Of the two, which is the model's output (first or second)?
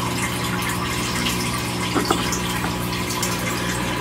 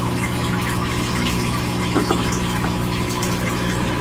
second